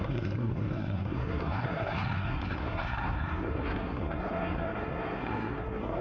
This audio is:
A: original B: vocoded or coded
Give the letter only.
B